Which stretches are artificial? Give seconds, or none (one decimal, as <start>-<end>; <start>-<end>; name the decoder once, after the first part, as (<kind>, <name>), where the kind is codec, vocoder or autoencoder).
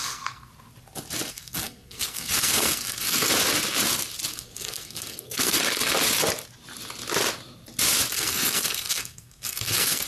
0.0-0.5 (codec, SNAC); 1.3-3.3; 4.3-5.6; 8.1-10.1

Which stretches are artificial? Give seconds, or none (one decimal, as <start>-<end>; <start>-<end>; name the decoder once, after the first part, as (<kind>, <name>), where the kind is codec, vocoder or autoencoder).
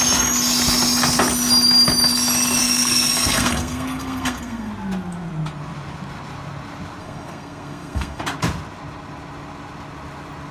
2.6-4.7 (codec, SNAC); 7.0-8.2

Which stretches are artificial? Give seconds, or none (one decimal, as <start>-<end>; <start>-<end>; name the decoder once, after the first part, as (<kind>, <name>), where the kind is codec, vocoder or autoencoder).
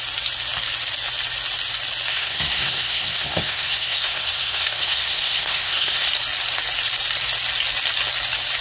2.1-6.1 (codec, SNAC)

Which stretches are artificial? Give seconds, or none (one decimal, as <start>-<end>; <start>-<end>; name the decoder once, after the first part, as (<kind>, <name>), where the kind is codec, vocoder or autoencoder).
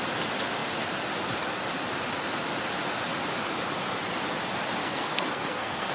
4.8-5.9 (codec, SNAC)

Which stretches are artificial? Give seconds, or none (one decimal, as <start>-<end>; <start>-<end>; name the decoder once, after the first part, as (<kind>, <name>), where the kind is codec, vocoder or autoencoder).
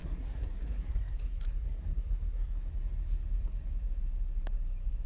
0.0-2.7 (codec, SNAC)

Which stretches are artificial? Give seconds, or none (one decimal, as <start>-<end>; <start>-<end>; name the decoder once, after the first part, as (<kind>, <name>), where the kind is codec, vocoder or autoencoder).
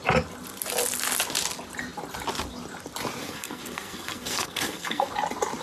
3.2-5.1 (codec, SNAC)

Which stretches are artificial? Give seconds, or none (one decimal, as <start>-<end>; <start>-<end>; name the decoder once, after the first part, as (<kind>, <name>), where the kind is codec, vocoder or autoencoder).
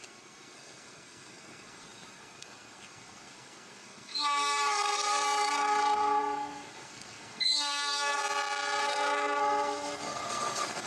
0.0-8.2 (codec, SNAC); 8.8-10.9